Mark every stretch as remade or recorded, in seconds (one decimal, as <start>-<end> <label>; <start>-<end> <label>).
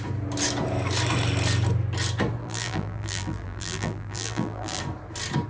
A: 0.0-2.4 recorded; 2.4-4.8 remade; 4.8-5.5 recorded